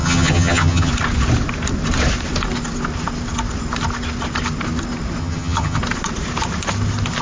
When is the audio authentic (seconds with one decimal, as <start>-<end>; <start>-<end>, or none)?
0.9-5.2; 5.8-7.2